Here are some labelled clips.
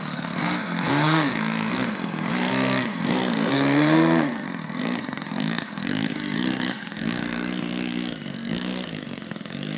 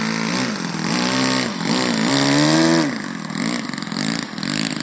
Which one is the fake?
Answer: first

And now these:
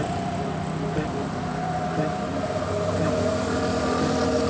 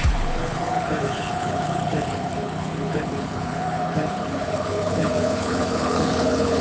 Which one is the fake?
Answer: second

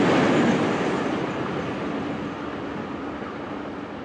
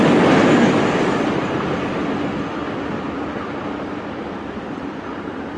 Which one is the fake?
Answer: second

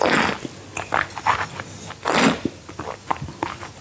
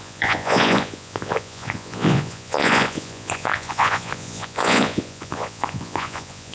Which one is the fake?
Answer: second